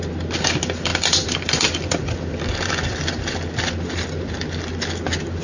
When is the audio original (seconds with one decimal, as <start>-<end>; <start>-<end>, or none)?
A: 0.0-0.9; 3.1-5.4

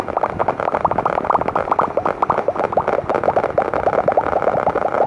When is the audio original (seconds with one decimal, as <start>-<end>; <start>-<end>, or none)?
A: 0.0-0.4; 1.7-5.1